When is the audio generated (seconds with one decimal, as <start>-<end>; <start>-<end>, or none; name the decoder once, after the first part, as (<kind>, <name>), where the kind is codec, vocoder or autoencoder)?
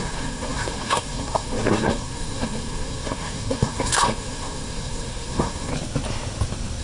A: 0.0-5.7 (codec, SNAC)